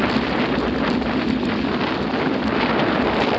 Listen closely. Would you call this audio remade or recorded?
recorded